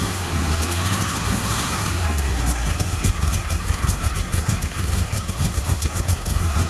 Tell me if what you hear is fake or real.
fake